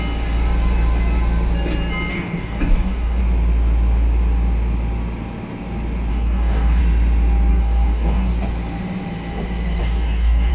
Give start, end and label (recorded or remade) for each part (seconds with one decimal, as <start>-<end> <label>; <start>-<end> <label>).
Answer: 0.0-2.1 recorded; 2.1-3.2 remade; 3.2-6.1 recorded; 6.1-6.8 remade; 6.8-7.5 recorded; 7.5-8.3 remade; 8.3-9.8 recorded; 9.8-10.5 remade